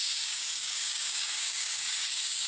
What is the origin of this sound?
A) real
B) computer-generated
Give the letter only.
B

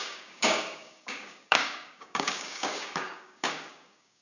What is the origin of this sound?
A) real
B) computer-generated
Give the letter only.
B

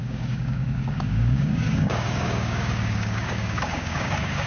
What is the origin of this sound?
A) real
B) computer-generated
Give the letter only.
B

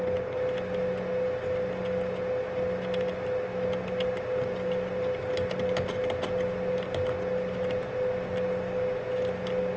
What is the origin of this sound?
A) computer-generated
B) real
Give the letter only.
B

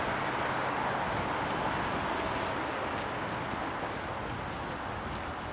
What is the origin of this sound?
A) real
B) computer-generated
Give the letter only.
A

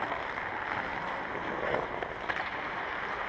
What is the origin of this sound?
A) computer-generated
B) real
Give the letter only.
B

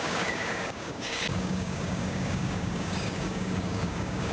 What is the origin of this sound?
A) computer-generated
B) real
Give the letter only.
A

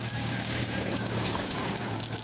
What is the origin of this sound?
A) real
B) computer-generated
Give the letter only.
B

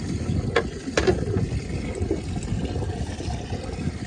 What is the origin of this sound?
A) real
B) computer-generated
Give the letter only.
A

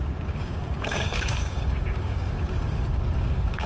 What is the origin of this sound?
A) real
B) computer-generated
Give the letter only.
B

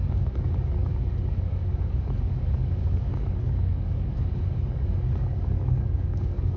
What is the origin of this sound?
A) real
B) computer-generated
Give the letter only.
B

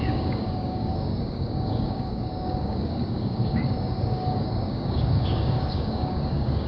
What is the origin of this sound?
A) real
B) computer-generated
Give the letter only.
B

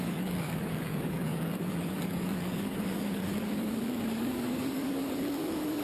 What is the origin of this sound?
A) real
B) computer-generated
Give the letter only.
B